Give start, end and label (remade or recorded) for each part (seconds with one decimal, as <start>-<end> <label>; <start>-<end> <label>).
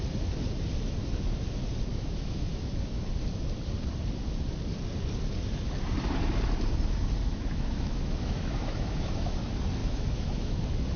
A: 0.0-1.9 recorded; 1.9-2.7 remade; 2.7-7.3 recorded; 7.3-9.4 remade; 9.4-9.8 recorded; 9.8-10.6 remade; 10.6-11.0 recorded